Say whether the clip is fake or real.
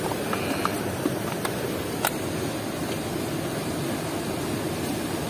real